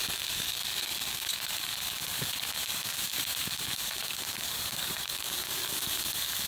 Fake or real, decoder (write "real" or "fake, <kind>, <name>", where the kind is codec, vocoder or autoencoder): fake, codec, DAC